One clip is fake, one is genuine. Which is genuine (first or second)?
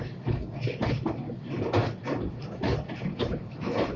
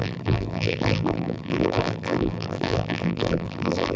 first